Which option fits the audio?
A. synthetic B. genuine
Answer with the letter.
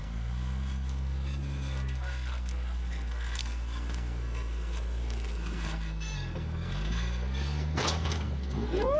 A